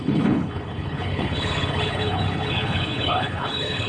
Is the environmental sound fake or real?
fake